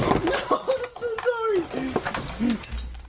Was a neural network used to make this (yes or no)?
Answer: no